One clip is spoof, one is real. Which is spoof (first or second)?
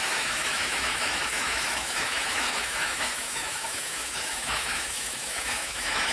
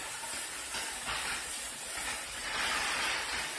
first